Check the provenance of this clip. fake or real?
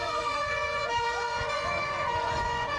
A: fake